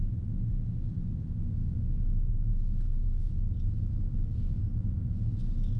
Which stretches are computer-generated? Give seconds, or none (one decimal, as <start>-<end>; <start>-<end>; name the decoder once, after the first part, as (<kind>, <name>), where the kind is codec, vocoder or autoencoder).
none